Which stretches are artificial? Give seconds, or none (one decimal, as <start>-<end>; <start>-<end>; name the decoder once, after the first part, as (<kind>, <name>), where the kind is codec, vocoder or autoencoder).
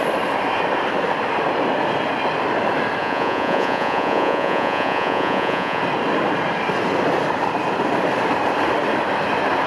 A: 3.0-5.8 (vocoder, Vocos)